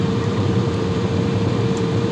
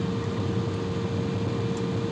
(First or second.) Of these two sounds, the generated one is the first